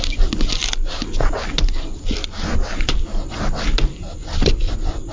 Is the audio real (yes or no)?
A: yes